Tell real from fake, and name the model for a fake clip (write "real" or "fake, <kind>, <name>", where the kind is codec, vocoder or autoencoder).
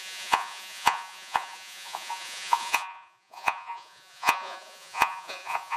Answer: fake, vocoder, Vocos